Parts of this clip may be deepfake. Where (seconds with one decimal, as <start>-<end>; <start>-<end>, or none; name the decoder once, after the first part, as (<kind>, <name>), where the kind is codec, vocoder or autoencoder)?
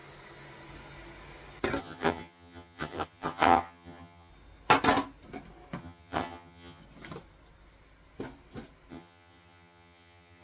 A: 1.8-4.3 (vocoder, HiFi-GAN); 5.8-6.8; 8.9-10.4